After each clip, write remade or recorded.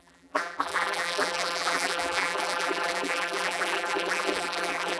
remade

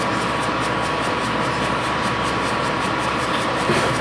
remade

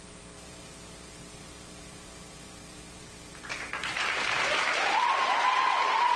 remade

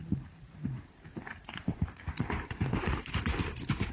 remade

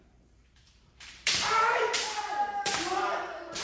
remade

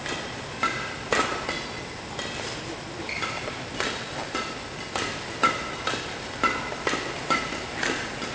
recorded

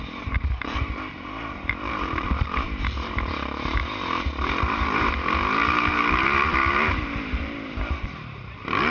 remade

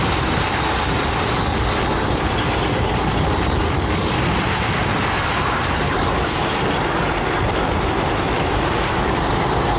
remade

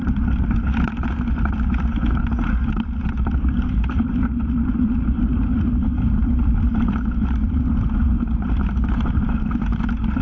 remade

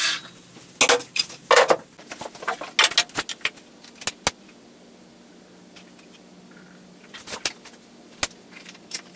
recorded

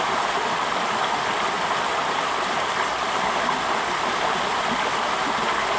recorded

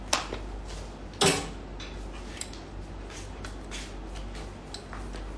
recorded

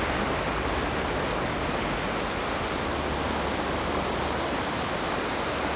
recorded